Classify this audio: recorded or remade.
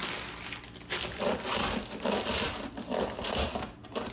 recorded